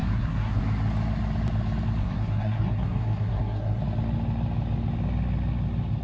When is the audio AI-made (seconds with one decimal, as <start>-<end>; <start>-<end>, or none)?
0.0-0.6; 2.0-3.8